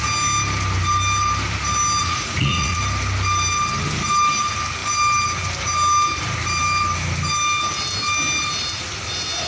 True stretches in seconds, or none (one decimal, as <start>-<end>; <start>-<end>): 0.0-2.0; 2.8-9.5